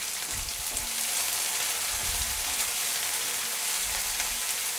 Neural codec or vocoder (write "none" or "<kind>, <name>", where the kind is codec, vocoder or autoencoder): vocoder, BigVGAN v2